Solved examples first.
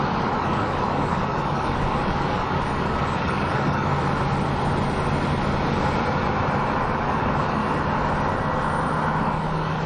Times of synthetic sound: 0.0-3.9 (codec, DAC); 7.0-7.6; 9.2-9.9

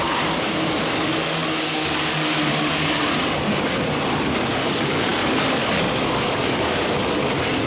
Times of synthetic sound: 0.0-3.0 (codec, DAC); 4.2-7.7

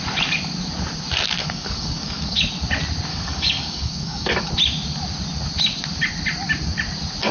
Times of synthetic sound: 1.4-2.4 (codec, DAC); 3.1-4.5

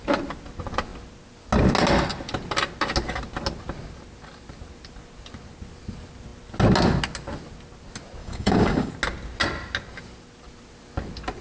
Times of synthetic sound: 8.2-8.9 (codec, DAC)

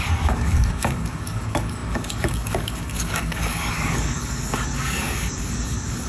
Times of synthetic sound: 0.0-6.1 (codec, DAC)

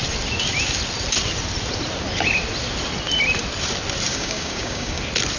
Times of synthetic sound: 4.1-5.0 (codec, DAC)